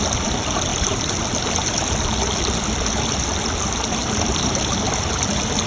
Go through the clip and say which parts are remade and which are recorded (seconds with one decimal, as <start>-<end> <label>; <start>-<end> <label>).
0.0-5.7 recorded